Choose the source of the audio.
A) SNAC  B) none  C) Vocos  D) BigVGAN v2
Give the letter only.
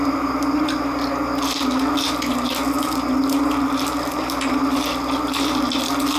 B